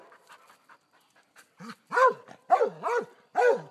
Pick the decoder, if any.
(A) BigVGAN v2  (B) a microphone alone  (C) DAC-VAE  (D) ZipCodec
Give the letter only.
B